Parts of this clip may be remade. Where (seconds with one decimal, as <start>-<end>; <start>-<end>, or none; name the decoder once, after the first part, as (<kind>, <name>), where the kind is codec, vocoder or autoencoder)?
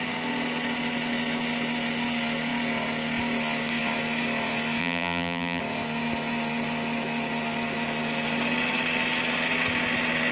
4.8-5.6 (vocoder, BigVGAN v2)